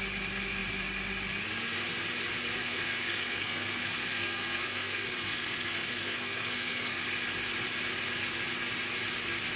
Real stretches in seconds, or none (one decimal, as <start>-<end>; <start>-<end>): 0.0-2.6; 7.0-9.6